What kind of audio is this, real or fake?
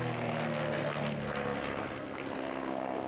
fake